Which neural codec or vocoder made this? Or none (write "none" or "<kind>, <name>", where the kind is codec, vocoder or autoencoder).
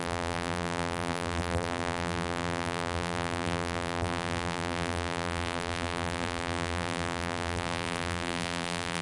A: vocoder, BigVGAN v2